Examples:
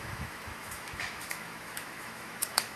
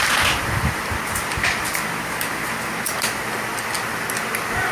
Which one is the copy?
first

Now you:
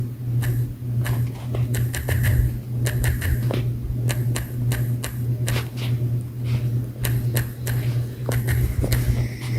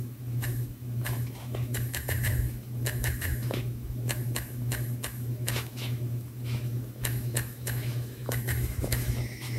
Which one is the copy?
second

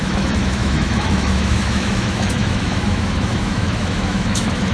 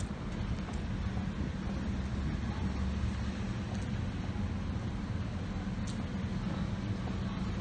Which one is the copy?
first